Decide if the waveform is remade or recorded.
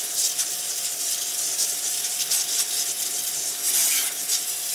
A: recorded